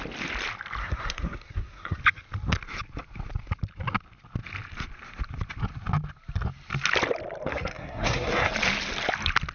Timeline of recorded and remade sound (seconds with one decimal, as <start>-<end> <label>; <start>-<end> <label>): 0.0-0.8 recorded; 0.8-2.0 remade; 2.0-7.5 recorded; 7.5-8.5 remade; 8.5-9.5 recorded